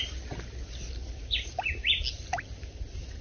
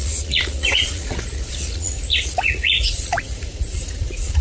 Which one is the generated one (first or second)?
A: second